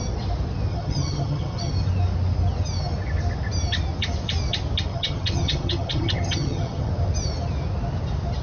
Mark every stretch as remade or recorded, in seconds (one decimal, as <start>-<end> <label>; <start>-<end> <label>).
0.0-0.7 recorded; 0.7-1.7 remade; 1.7-4.9 recorded; 4.9-6.9 remade; 6.9-8.4 recorded